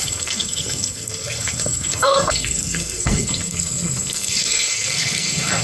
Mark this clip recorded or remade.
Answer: remade